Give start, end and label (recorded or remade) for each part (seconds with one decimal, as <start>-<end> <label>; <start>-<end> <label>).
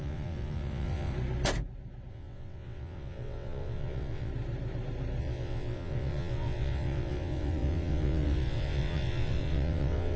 0.0-1.1 remade; 1.1-2.1 recorded; 2.1-4.3 remade; 4.3-5.2 recorded; 5.2-10.2 remade